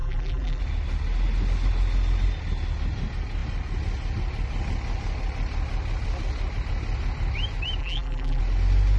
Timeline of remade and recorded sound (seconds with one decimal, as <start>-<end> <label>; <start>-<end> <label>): 0.0-0.6 remade; 0.6-7.8 recorded; 7.8-8.4 remade; 8.4-9.0 recorded